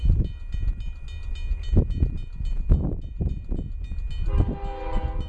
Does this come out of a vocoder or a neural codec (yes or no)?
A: no